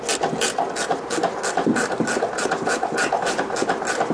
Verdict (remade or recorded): recorded